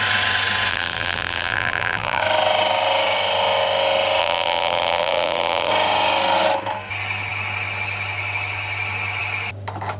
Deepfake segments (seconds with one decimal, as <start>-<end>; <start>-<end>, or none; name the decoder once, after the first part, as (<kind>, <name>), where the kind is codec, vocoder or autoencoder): 0.7-2.2 (vocoder, BigVGAN v2); 4.2-5.7